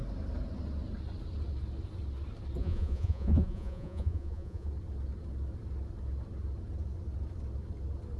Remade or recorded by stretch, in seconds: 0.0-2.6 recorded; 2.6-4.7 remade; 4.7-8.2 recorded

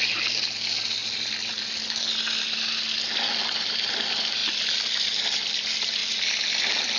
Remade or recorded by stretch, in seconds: 0.0-1.0 recorded; 1.0-1.7 remade; 1.7-7.0 recorded